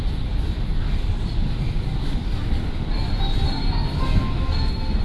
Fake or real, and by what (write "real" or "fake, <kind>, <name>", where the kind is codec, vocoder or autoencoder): real